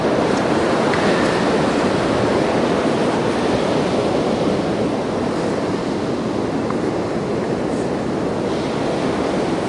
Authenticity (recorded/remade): recorded